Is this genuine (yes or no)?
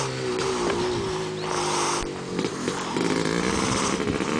yes